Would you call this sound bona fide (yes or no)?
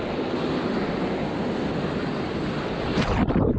yes